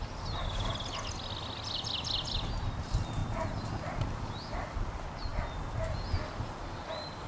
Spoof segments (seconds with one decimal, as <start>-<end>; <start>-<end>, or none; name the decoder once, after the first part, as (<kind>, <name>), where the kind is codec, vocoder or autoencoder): none